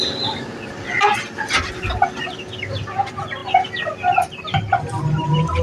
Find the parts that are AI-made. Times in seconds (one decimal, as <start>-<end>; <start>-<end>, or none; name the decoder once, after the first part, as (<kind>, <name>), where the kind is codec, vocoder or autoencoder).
none